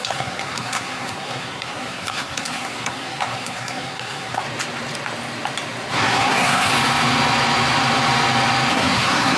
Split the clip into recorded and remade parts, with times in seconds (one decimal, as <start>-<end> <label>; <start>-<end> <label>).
0.0-4.4 remade; 4.4-5.9 recorded; 5.9-6.7 remade; 6.7-8.7 recorded; 8.7-9.4 remade